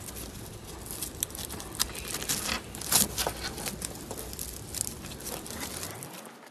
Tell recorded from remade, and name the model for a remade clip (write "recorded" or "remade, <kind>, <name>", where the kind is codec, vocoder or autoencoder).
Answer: recorded